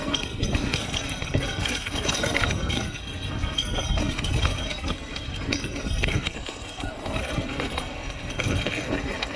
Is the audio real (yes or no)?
no